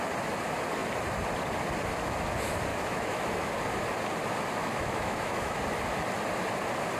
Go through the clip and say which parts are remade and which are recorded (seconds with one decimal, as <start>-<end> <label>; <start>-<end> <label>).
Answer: 0.0-2.7 recorded; 2.7-3.5 remade; 3.5-4.6 recorded; 4.6-5.6 remade; 5.6-7.0 recorded